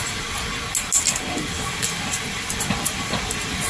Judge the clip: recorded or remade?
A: recorded